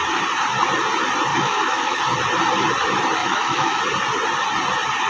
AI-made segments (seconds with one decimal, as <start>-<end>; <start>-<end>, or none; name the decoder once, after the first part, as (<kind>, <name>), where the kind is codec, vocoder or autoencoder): 1.3-2.0 (autoencoder, DAC-VAE); 3.2-3.8